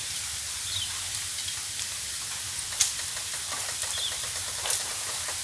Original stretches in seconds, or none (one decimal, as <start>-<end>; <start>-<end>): 0.0-5.4